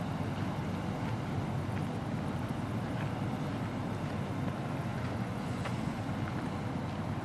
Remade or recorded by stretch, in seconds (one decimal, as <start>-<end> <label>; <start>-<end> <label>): 0.0-4.9 recorded; 4.9-6.0 remade; 6.0-7.2 recorded